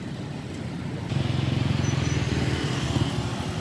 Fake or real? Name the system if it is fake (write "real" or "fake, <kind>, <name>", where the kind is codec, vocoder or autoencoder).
real